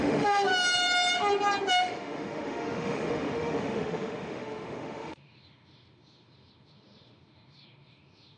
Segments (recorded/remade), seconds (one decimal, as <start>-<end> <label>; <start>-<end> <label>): 0.0-0.5 remade; 0.5-1.7 recorded; 1.7-8.4 remade